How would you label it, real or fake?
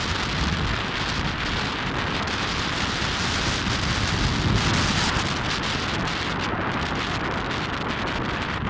real